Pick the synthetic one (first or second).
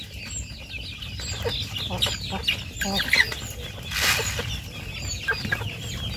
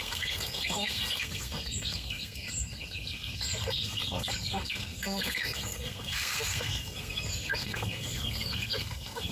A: second